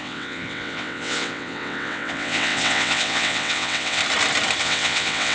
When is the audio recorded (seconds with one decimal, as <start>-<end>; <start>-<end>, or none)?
4.0-4.6